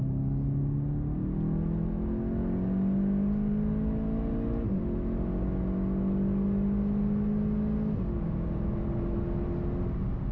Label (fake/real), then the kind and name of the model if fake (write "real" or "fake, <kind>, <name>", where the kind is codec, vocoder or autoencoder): real